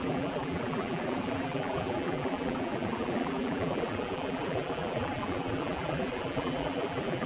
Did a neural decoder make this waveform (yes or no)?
yes